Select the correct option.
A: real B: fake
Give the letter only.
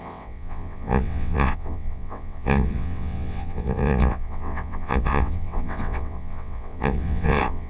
B